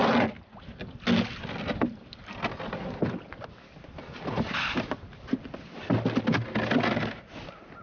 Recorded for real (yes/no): yes